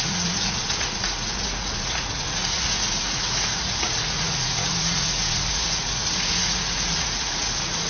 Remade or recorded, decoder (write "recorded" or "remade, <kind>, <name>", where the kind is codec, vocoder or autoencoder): remade, vocoder, Vocos